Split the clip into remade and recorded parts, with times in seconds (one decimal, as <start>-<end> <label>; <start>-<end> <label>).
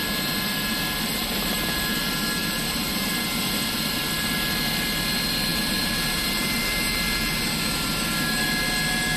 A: 0.0-1.2 recorded; 1.2-2.0 remade; 2.0-2.4 recorded; 2.4-3.1 remade; 3.1-5.5 recorded; 5.5-7.9 remade; 7.9-9.2 recorded